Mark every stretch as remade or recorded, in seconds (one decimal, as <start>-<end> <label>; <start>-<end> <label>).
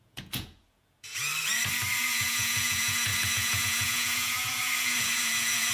0.0-1.3 remade; 1.3-2.0 recorded; 2.0-5.7 remade